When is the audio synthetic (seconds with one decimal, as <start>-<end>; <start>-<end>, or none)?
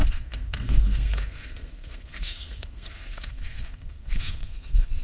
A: 0.0-5.0